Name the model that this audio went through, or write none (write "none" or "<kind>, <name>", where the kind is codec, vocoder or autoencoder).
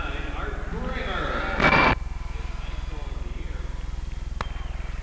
none